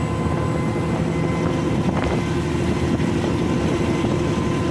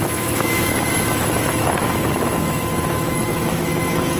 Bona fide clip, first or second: first